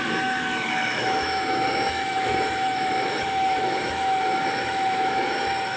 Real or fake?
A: fake